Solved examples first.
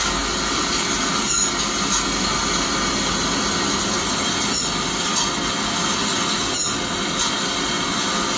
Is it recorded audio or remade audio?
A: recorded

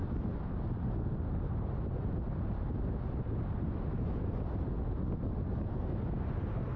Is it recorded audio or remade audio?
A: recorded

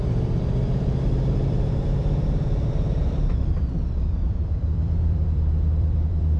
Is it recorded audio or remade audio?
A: remade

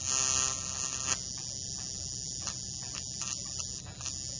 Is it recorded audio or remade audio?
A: recorded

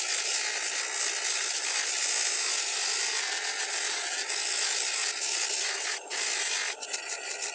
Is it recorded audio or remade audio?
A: recorded